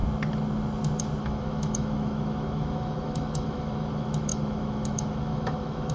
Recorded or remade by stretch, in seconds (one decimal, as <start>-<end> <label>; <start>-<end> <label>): 0.0-1.2 recorded; 1.2-5.9 remade